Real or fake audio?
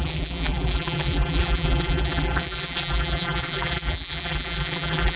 fake